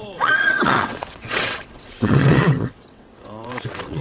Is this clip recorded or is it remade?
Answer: remade